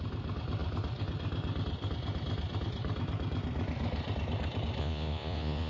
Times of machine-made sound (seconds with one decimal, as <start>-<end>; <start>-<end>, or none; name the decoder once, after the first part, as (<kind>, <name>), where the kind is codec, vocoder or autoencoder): 4.8-5.7 (vocoder, Vocos)